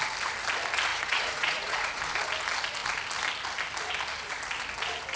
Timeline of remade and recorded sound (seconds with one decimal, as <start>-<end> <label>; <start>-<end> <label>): 0.0-0.9 recorded; 0.9-2.0 remade; 2.0-5.2 recorded